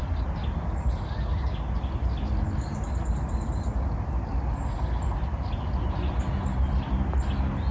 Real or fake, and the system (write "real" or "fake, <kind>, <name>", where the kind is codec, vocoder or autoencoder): real